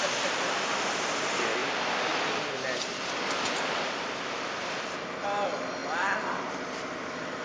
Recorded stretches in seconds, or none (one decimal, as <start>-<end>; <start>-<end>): 1.6-3.6